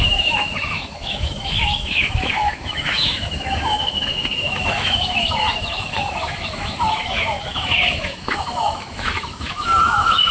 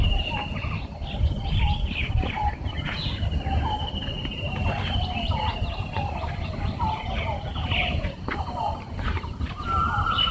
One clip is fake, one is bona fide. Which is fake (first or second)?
first